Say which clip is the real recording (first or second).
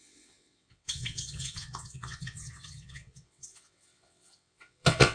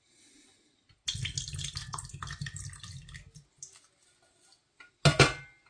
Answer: second